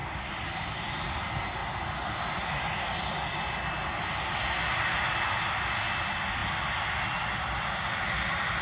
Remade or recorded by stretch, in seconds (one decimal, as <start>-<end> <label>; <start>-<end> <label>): 0.0-8.6 recorded